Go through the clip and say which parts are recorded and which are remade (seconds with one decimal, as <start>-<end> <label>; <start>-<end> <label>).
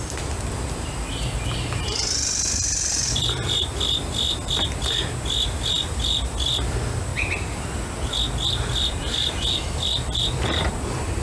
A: 0.0-7.1 remade; 7.1-8.6 recorded; 8.6-11.2 remade